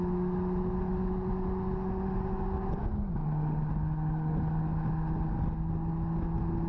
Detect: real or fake real